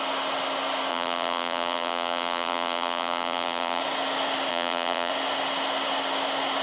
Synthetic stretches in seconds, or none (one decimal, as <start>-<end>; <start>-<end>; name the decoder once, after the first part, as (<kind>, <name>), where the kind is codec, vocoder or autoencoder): 0.9-3.8 (vocoder, BigVGAN v2); 4.5-5.1